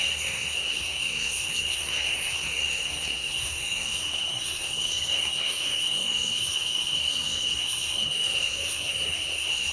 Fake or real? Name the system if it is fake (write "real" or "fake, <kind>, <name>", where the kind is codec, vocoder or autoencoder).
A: fake, codec, SNAC